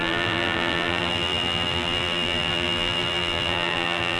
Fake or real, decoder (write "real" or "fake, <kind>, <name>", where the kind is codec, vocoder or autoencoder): fake, vocoder, BigVGAN v2